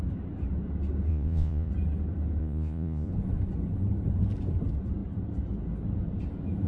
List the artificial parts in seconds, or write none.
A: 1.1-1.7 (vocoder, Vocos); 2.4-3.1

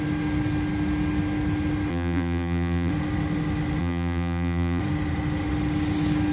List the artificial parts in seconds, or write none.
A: 1.9-2.9 (vocoder, BigVGAN v2); 3.8-4.8